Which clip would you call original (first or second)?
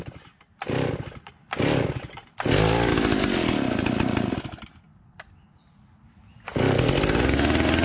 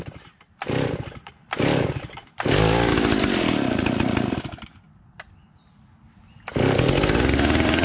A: first